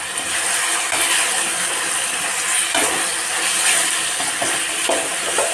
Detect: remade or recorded recorded